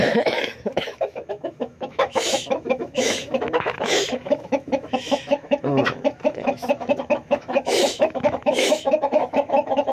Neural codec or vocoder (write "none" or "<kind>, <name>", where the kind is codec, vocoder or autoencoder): autoencoder, DAC-VAE